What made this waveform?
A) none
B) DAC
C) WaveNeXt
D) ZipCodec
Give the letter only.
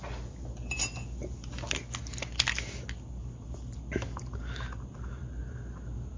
A